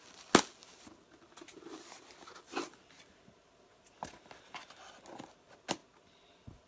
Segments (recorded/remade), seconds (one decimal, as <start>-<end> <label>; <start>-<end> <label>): 0.0-6.7 recorded